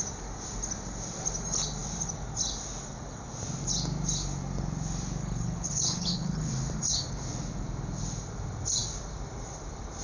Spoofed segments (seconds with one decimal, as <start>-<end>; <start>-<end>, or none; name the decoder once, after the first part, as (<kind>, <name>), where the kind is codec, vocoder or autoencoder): 5.2-6.5 (codec, HILCodec)